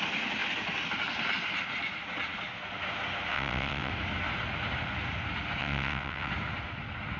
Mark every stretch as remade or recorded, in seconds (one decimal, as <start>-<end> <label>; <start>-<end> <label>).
0.0-3.3 recorded; 3.3-3.9 remade; 3.9-5.6 recorded; 5.6-6.3 remade; 6.3-7.2 recorded